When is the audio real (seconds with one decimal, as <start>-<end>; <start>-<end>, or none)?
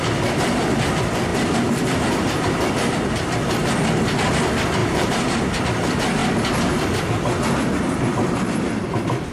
0.0-4.8; 5.6-9.3